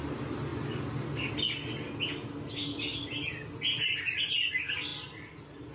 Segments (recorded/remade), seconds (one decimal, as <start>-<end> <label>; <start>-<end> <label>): 0.0-5.7 recorded